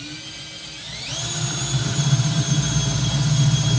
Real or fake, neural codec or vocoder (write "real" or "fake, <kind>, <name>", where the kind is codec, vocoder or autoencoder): real